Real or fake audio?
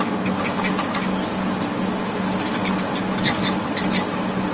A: real